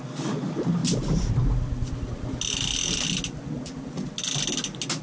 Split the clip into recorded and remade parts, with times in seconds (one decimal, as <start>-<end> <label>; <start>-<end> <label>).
0.0-0.8 recorded; 0.8-1.3 remade; 1.3-5.0 recorded

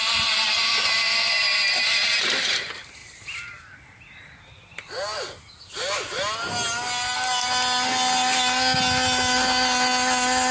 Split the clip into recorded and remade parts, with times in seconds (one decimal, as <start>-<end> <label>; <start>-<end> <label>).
0.0-0.7 remade; 0.7-10.5 recorded

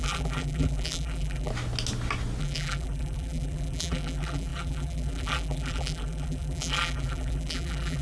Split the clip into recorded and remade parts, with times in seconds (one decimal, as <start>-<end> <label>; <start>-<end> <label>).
0.0-1.5 remade; 1.5-2.4 recorded; 2.4-8.0 remade

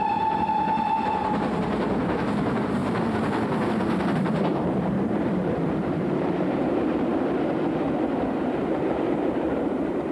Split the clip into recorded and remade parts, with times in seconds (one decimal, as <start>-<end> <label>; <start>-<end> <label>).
0.0-2.8 remade; 2.8-4.1 recorded; 4.1-7.1 remade; 7.1-8.6 recorded; 8.6-10.1 remade

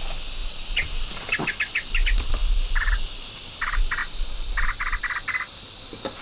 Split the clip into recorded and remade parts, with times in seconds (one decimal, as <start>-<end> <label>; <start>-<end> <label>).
0.0-0.4 recorded; 0.4-1.1 remade; 1.1-2.4 recorded; 2.4-2.9 remade; 2.9-4.0 recorded; 4.0-4.5 remade; 4.5-6.2 recorded

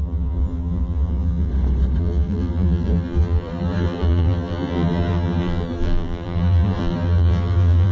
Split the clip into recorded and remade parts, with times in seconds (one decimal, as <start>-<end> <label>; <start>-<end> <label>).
0.0-1.5 remade; 1.5-2.0 recorded; 2.0-7.9 remade

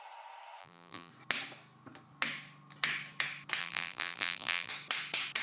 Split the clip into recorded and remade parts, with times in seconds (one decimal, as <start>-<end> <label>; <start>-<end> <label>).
0.0-0.6 recorded; 0.6-1.1 remade; 1.1-3.6 recorded; 3.6-4.7 remade; 4.7-5.4 recorded